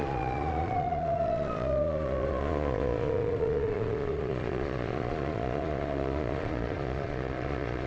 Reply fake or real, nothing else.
fake